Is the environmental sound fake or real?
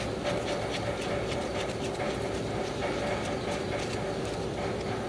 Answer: real